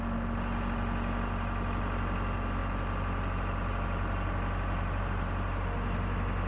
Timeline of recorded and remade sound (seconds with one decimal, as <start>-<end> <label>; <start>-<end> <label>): 0.0-6.5 recorded